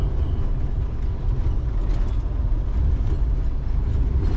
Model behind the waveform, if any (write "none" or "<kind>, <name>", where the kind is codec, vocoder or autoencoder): none